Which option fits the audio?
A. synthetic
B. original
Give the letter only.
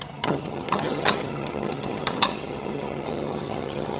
A